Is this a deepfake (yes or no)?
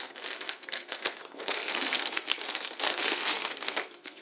yes